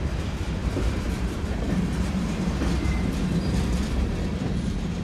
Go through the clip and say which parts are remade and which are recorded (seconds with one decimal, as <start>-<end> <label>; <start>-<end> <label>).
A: 0.0-0.6 recorded; 0.6-3.6 remade; 3.6-5.0 recorded